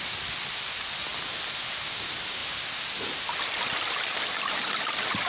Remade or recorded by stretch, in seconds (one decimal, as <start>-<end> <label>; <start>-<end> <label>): 0.0-5.3 recorded